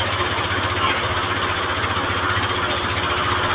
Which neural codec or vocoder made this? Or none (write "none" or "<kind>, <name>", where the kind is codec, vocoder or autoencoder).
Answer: none